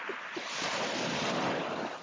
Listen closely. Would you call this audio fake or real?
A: real